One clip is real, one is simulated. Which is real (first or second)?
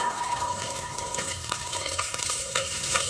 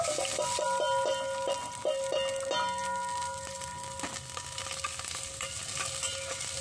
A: second